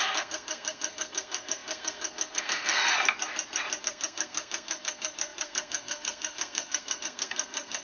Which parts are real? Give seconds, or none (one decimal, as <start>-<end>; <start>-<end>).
2.8-3.8